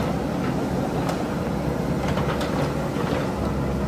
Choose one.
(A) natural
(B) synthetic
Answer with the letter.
A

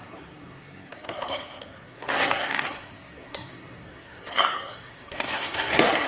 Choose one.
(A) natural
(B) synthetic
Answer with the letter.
B